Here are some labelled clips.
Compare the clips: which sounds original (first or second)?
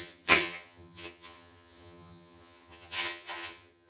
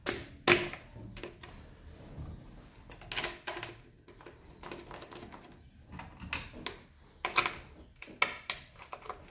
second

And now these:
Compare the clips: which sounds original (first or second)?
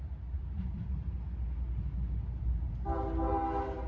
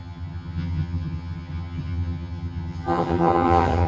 first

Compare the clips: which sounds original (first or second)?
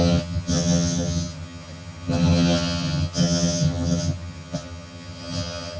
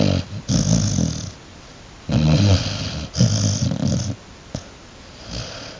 second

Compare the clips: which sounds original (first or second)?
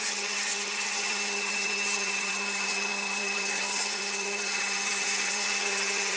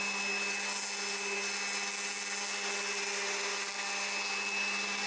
second